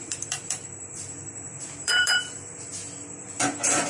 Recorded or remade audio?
remade